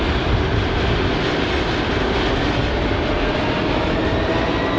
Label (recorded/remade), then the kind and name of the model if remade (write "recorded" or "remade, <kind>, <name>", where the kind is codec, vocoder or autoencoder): recorded